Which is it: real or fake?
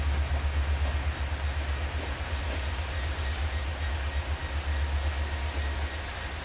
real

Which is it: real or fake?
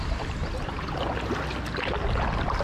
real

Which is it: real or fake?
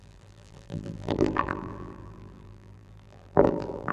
fake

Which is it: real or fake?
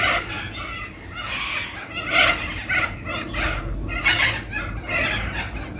real